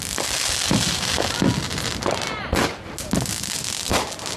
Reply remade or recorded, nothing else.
recorded